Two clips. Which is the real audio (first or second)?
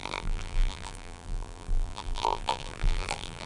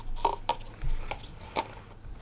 second